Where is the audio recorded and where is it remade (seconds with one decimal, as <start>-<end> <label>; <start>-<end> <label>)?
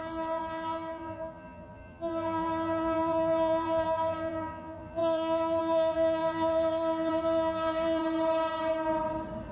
0.0-8.0 remade; 8.0-9.5 recorded